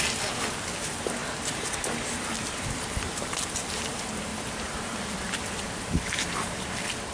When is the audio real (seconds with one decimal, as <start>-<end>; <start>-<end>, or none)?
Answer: 0.0-4.3; 6.6-7.1